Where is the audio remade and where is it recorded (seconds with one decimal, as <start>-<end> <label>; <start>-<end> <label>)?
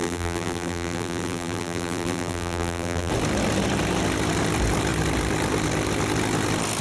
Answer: 0.0-3.1 remade; 3.1-6.8 recorded